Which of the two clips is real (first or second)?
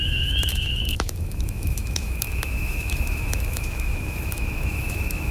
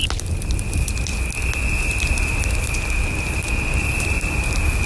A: second